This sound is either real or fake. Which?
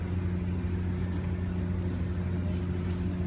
real